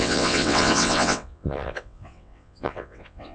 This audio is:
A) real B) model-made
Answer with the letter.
B